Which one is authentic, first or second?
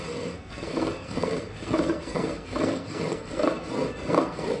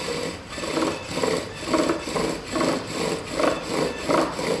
second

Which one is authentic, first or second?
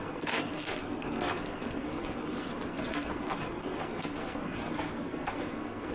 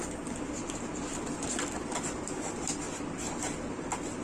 second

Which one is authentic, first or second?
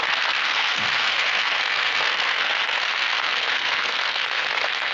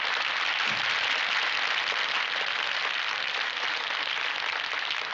second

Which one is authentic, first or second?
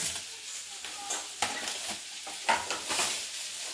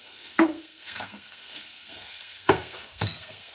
first